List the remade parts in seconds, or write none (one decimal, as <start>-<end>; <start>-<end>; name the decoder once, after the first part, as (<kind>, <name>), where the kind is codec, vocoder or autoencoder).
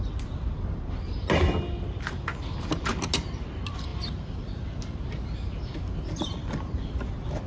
none